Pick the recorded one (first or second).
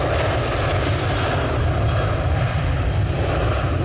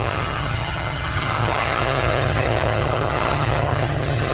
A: first